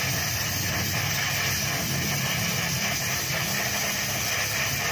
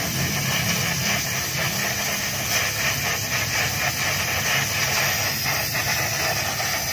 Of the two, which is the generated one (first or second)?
first